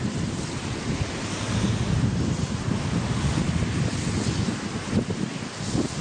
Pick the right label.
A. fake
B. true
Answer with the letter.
B